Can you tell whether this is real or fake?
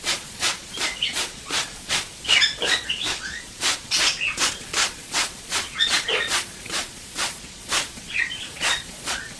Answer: fake